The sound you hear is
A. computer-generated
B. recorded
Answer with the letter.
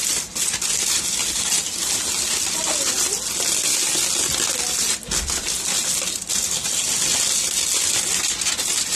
B